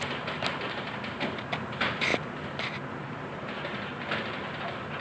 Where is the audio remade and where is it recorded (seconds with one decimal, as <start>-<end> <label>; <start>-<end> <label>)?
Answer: 0.0-5.0 recorded

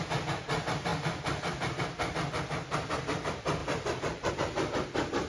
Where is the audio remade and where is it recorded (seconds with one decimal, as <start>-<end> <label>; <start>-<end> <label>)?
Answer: 0.0-3.6 recorded; 3.6-4.3 remade; 4.3-5.3 recorded

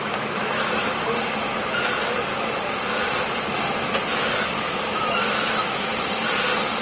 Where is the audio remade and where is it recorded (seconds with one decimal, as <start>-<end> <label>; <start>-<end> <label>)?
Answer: 0.0-0.8 remade; 0.8-4.9 recorded; 4.9-5.9 remade; 5.9-6.8 recorded